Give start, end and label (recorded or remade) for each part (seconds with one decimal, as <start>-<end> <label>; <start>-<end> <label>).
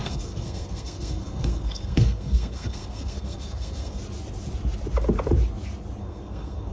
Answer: 0.0-4.0 remade; 4.0-6.0 recorded; 6.0-6.7 remade